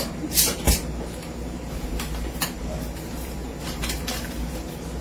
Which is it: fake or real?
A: fake